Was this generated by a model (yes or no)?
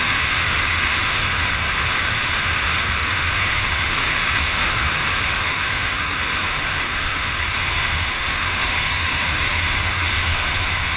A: yes